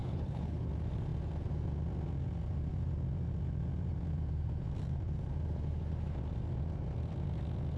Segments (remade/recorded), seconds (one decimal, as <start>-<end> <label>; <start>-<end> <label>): 0.0-0.7 remade; 0.7-7.8 recorded